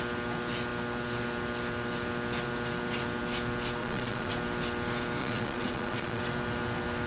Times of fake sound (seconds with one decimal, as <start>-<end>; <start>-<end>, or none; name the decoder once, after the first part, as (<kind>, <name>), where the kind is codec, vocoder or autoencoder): 3.8-4.3 (vocoder, Vocos); 5.2-6.2